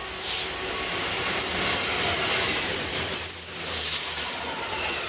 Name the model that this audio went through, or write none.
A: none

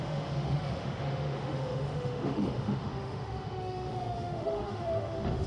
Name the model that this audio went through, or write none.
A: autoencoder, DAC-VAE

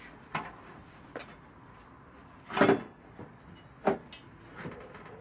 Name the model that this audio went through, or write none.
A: none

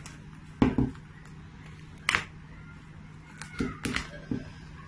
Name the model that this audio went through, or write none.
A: none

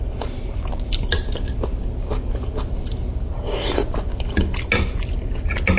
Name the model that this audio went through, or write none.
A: none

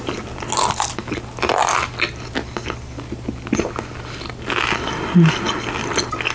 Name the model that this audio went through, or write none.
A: none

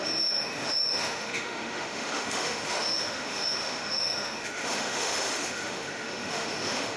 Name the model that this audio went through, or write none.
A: autoencoder, DAC-VAE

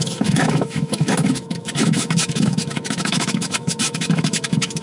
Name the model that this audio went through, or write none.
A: autoencoder, DAC-VAE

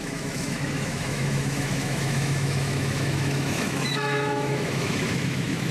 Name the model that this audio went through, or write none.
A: autoencoder, DAC-VAE